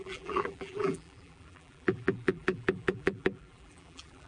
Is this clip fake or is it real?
fake